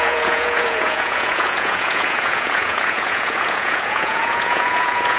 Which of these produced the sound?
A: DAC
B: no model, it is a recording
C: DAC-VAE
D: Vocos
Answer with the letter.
D